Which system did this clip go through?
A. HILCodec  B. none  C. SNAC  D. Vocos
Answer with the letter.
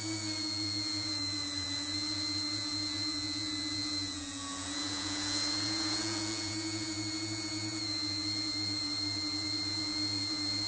D